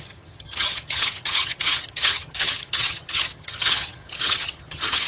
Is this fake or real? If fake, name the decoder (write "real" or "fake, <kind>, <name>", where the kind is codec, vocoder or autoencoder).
fake, vocoder, HiFi-GAN